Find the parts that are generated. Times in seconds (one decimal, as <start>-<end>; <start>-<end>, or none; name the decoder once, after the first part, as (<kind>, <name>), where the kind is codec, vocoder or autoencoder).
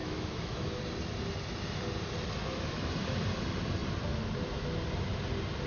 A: 0.0-0.8 (autoencoder, DAC-VAE); 2.4-2.9